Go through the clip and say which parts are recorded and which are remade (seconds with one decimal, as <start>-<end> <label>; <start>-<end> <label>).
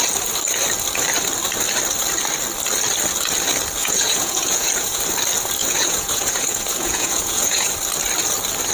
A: 0.0-3.8 recorded; 3.8-5.0 remade; 5.0-5.6 recorded; 5.6-7.7 remade; 7.7-8.7 recorded